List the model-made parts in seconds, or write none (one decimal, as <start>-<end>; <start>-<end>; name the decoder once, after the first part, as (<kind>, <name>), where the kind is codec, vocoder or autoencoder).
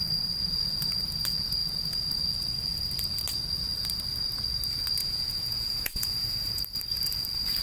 5.0-6.5 (vocoder, Vocos)